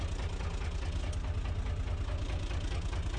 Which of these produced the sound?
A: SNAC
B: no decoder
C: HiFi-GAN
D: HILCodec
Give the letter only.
B